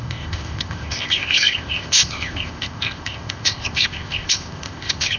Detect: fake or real fake